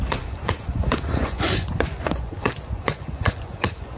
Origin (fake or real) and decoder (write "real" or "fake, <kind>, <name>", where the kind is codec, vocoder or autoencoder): fake, vocoder, Vocos